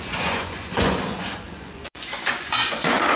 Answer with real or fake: fake